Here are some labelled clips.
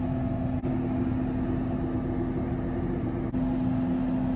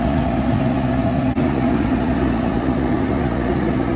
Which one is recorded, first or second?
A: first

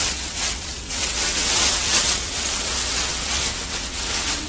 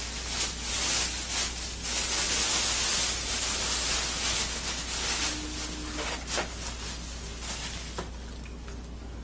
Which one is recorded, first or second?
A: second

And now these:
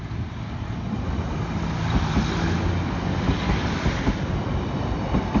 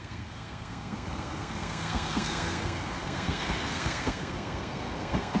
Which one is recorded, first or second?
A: first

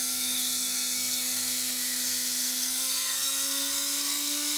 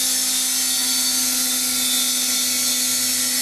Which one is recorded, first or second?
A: second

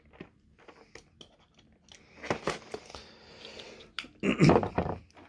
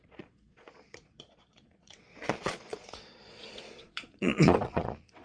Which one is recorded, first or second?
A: first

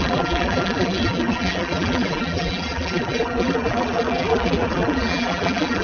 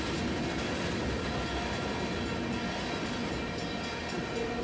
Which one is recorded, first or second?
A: second